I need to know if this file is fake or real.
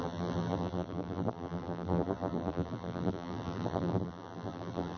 fake